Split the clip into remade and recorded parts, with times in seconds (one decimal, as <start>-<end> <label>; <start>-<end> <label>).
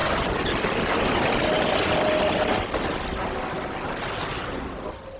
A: 0.0-5.2 recorded